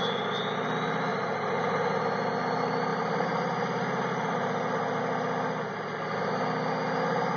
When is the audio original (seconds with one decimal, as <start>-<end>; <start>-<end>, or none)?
0.0-1.1; 2.0-2.9; 5.0-7.4

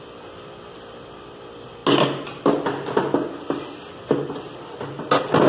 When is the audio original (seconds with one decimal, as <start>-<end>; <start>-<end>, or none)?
0.0-5.5

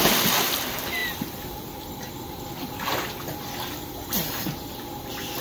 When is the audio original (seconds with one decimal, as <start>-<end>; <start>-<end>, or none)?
0.0-1.0; 3.4-5.4

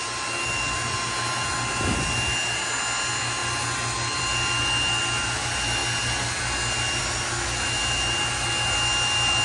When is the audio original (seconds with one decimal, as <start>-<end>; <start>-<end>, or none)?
0.0-9.4

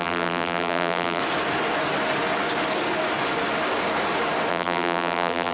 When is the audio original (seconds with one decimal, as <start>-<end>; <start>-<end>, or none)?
1.2-4.5

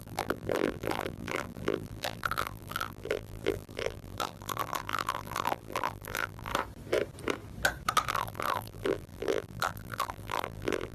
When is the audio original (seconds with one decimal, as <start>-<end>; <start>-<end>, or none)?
6.5-8.1